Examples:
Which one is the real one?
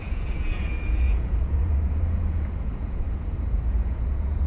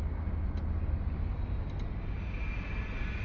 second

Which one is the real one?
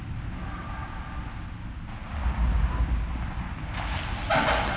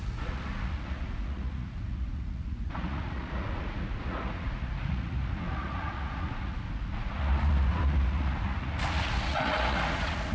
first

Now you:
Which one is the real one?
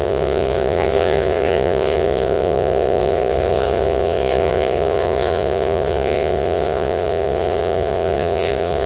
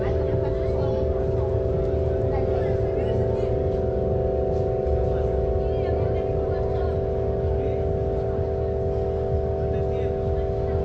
second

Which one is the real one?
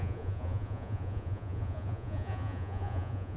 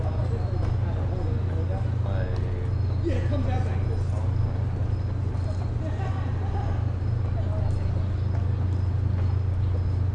second